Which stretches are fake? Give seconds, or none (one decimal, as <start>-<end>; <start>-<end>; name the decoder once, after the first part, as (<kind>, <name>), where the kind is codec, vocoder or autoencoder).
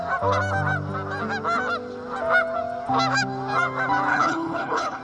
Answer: 4.1-5.0 (codec, HILCodec)